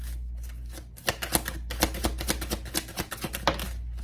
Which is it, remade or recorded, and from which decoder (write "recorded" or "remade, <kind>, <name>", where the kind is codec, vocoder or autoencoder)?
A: recorded